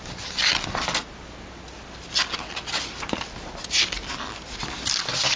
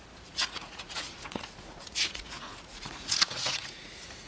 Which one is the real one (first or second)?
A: first